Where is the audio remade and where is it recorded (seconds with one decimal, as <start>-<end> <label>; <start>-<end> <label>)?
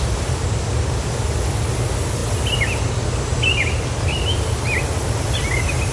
0.0-5.9 recorded